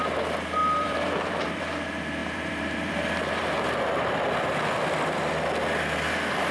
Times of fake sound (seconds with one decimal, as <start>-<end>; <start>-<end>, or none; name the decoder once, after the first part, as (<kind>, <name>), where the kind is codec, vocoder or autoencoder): 0.6-1.6 (vocoder, BigVGAN v2); 2.2-5.3